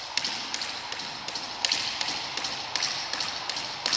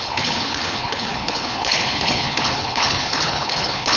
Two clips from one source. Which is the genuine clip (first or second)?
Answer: first